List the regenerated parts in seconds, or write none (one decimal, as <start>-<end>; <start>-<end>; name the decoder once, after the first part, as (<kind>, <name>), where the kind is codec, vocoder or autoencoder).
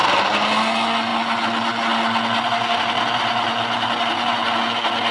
none